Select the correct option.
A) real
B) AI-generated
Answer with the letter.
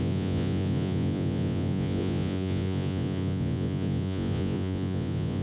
B